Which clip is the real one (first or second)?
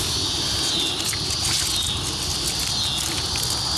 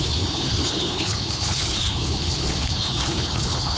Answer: first